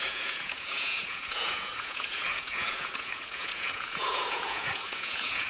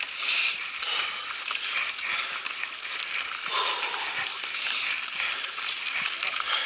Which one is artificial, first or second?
first